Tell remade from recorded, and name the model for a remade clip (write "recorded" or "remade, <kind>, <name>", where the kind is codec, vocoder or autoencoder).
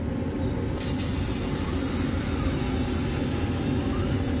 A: recorded